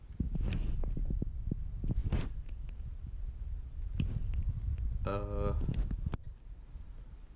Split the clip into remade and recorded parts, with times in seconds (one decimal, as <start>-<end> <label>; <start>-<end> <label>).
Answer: 0.0-7.4 recorded